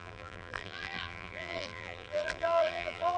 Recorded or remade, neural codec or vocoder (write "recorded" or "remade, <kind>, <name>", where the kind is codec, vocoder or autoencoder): remade, vocoder, BigVGAN v2